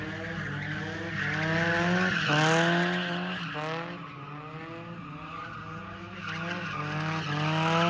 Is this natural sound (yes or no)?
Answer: yes